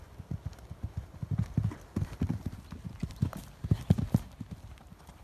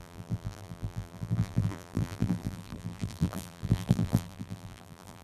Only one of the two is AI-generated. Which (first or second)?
second